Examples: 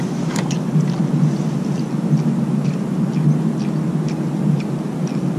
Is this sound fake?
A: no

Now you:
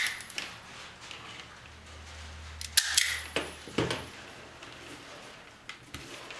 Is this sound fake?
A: no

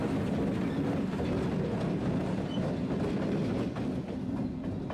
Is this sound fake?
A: no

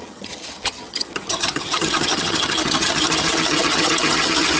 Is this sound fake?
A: yes